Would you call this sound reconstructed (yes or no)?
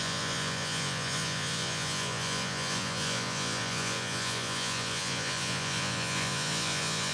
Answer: yes